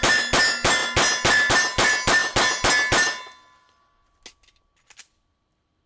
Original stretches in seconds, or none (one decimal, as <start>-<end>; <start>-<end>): 0.0-5.9